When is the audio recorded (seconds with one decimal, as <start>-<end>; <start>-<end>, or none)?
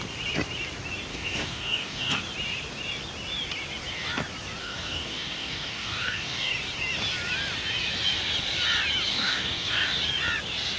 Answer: 0.0-1.1; 2.2-4.6; 6.5-9.1; 10.0-10.8